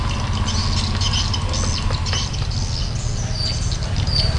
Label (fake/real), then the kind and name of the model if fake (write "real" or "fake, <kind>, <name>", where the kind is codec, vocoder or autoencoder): real